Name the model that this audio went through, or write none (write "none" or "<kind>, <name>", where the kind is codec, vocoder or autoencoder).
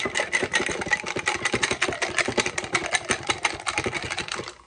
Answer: vocoder, BigVGAN v2